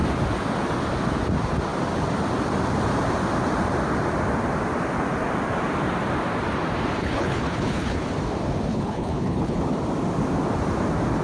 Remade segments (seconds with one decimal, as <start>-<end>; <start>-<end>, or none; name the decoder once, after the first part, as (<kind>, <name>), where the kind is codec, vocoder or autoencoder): 7.0-8.1 (codec, HILCodec); 8.7-9.6